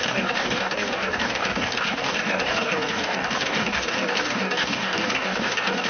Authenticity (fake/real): fake